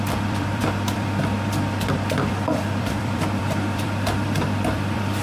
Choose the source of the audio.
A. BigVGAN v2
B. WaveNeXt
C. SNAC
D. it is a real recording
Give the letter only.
A